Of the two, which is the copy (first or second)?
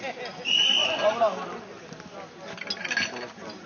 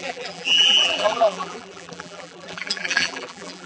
second